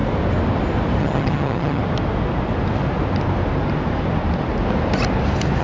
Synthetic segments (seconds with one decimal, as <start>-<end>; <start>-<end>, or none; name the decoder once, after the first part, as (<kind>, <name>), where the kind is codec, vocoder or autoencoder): 1.0-1.8 (vocoder, HiFi-GAN)